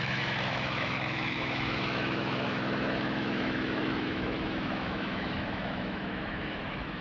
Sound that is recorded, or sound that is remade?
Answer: remade